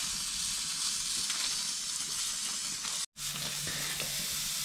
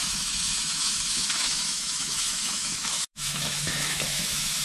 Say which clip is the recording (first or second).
first